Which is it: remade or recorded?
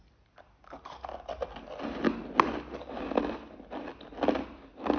recorded